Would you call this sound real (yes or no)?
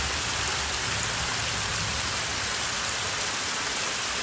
yes